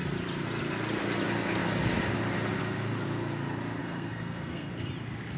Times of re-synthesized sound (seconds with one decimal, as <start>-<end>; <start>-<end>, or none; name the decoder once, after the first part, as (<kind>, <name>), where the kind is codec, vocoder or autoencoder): 3.8-4.7 (codec, SNAC)